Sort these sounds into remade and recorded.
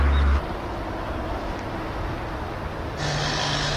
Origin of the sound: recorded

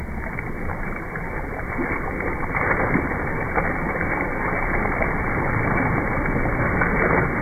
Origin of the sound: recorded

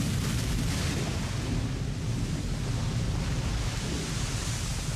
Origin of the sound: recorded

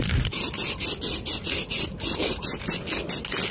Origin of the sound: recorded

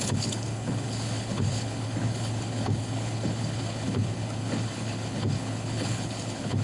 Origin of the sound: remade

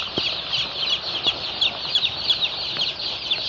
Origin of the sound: recorded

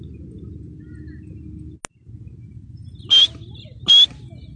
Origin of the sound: recorded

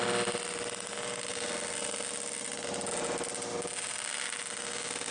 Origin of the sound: recorded